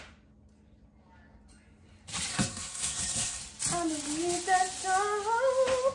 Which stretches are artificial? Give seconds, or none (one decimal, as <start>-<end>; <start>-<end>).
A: 2.3-3.4